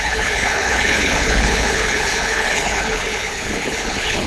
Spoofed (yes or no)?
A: yes